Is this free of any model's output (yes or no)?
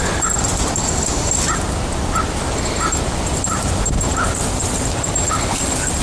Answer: yes